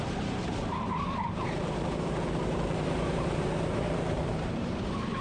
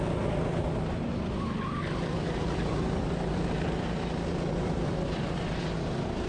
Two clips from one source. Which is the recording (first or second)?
second